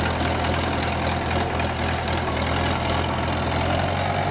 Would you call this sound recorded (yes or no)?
yes